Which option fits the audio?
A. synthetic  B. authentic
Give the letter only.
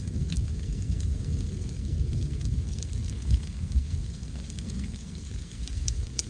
A